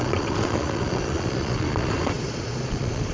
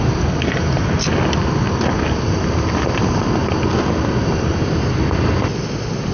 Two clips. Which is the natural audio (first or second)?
second